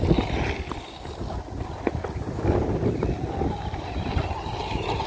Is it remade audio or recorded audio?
recorded